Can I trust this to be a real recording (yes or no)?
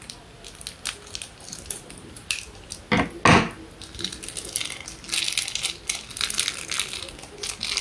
yes